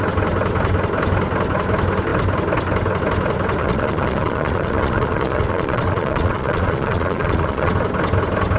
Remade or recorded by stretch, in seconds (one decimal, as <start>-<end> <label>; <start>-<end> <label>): 0.0-3.6 recorded; 3.6-7.7 remade; 7.7-8.6 recorded